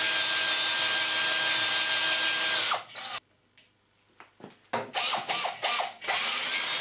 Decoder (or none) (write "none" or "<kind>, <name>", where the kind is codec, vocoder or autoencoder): none